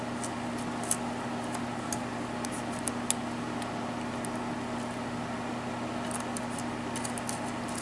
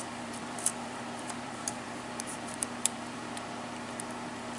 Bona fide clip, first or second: first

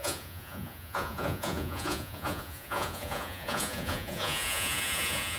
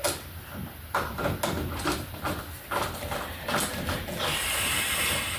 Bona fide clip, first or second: second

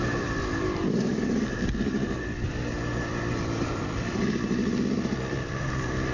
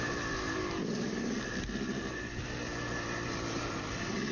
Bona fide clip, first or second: second